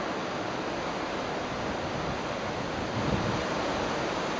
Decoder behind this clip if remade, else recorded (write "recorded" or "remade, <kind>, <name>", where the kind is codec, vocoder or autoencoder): recorded